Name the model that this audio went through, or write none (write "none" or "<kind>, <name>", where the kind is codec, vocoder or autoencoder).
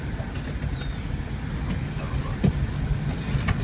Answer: none